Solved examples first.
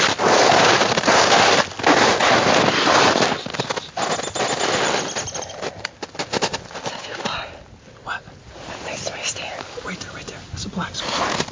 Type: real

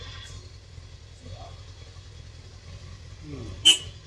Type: real